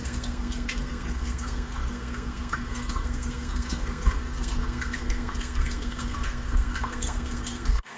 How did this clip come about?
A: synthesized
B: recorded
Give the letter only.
A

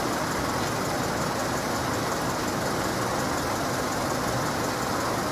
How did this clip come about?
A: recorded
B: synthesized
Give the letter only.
A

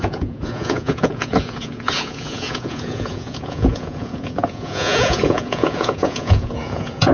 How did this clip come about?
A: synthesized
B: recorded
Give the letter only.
A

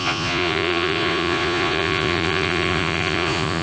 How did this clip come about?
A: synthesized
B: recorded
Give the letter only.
A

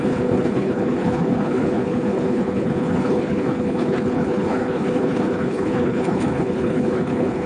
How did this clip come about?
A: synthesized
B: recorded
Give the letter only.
A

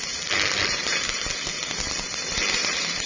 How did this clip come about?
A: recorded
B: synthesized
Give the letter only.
A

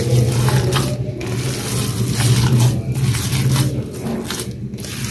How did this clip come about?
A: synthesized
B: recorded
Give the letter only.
B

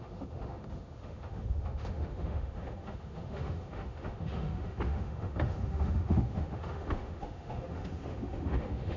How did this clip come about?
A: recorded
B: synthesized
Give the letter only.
B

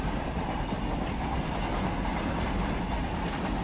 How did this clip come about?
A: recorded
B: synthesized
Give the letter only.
A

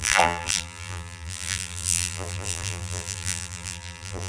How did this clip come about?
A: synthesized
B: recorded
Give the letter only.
A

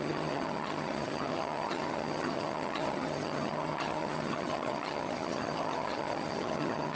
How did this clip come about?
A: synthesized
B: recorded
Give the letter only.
A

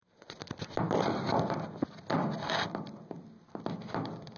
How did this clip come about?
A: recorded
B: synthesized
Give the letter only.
A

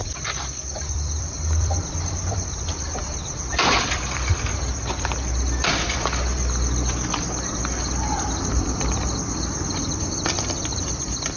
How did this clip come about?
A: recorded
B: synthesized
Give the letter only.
B